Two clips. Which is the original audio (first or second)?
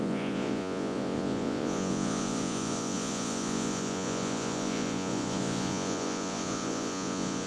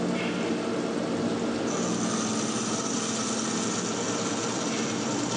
second